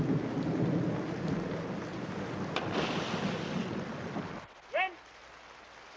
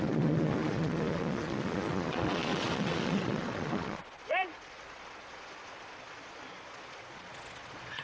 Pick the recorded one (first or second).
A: first